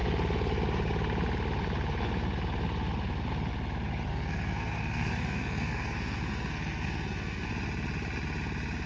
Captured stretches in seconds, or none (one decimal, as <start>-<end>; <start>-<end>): 0.0-4.1; 7.5-8.9